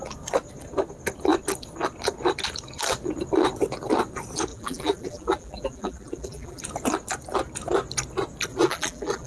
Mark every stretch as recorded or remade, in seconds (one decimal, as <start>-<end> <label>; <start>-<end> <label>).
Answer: 0.0-4.5 recorded; 4.5-6.6 remade; 6.6-8.5 recorded; 8.5-9.3 remade